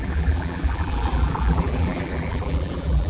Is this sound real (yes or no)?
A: no